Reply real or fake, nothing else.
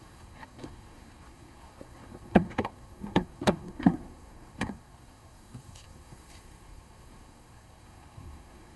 fake